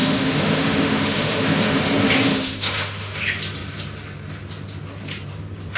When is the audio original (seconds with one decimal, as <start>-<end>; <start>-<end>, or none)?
1.9-2.3; 3.2-5.8